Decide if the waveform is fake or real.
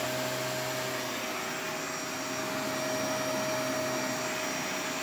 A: real